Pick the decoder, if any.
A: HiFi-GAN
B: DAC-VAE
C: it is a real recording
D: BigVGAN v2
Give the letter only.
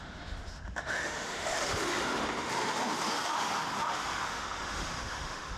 B